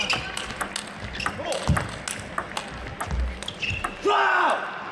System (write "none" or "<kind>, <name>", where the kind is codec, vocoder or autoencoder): none